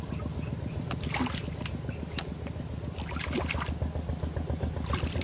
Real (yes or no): yes